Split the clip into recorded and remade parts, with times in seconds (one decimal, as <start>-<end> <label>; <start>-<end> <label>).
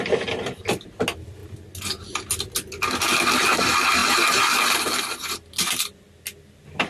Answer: 0.0-6.9 recorded